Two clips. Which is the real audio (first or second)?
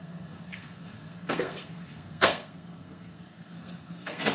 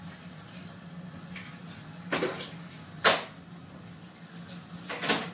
second